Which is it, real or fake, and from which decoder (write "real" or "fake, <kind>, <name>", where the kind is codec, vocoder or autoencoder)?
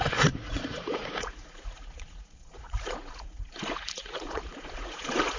fake, vocoder, Vocos